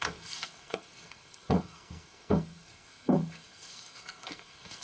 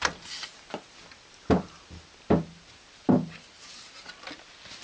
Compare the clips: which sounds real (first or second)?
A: second